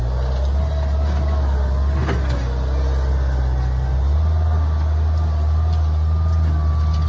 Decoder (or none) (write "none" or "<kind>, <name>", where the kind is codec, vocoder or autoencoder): none